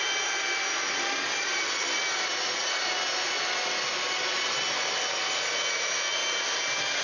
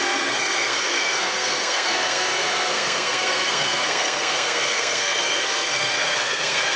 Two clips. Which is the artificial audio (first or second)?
second